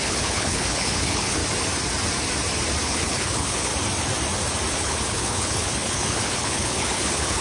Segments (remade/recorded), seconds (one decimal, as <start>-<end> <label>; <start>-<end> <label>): 0.0-1.4 remade; 1.4-2.8 recorded; 2.8-3.7 remade; 3.7-4.7 recorded; 4.7-7.4 remade